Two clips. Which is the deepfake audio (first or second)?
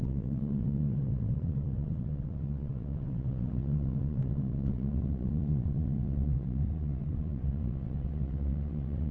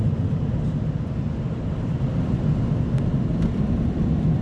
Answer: first